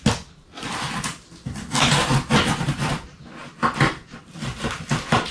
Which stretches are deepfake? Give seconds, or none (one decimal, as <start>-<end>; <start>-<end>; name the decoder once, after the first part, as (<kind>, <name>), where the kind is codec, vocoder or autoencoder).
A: none